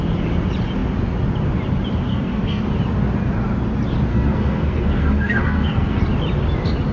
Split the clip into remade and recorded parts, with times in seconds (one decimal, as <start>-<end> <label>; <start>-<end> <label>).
0.0-2.1 recorded; 2.1-2.6 remade; 2.6-4.1 recorded; 4.1-6.0 remade; 6.0-6.9 recorded